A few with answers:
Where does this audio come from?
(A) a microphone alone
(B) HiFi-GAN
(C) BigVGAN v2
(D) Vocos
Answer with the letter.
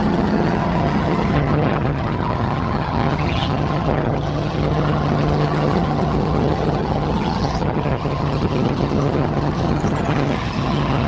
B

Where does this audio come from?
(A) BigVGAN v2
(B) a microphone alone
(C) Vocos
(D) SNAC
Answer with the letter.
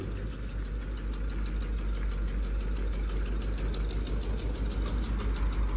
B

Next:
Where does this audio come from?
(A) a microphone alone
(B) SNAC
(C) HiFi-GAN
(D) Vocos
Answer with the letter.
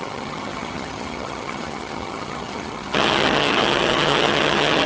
C